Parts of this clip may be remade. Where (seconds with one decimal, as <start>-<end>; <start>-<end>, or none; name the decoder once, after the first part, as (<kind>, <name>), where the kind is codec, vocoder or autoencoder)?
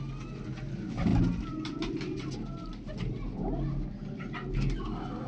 none